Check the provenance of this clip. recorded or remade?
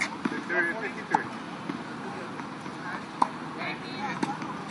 recorded